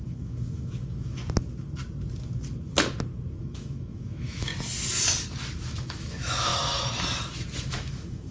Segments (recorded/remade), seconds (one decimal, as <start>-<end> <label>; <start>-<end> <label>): 0.0-1.2 remade; 1.2-3.4 recorded; 3.4-4.5 remade; 4.5-5.7 recorded; 5.7-6.5 remade; 6.5-7.7 recorded; 7.7-8.3 remade